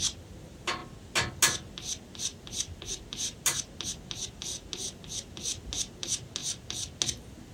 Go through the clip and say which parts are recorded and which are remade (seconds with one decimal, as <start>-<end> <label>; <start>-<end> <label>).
0.0-7.5 recorded